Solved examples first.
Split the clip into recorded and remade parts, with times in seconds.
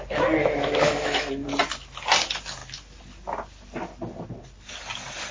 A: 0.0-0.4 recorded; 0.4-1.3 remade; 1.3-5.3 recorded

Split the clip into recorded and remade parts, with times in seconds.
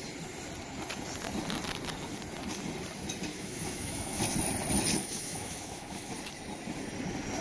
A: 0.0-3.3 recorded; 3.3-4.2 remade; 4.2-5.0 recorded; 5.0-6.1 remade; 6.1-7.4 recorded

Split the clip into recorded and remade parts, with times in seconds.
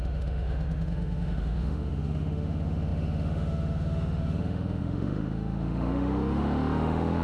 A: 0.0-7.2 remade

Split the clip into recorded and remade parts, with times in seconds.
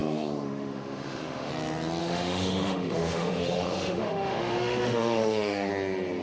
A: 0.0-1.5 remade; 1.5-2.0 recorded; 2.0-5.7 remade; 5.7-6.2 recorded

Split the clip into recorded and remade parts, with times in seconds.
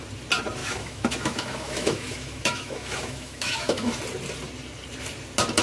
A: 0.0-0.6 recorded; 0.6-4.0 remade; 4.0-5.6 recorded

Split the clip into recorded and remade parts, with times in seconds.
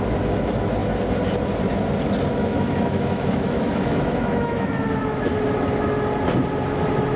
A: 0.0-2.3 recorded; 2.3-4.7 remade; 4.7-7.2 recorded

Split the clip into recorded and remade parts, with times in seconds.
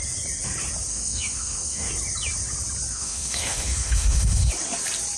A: 0.0-0.9 recorded; 0.9-1.9 remade; 1.9-2.9 recorded; 2.9-4.5 remade; 4.5-5.2 recorded